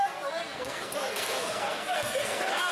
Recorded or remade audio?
remade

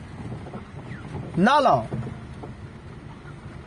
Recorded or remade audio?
recorded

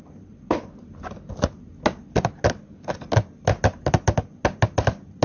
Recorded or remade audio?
recorded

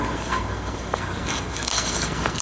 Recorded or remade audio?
remade